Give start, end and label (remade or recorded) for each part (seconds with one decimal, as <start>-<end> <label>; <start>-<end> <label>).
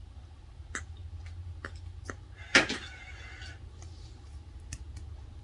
0.0-5.4 recorded